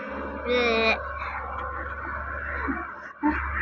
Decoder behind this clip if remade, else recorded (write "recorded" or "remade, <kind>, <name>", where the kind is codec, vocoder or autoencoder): recorded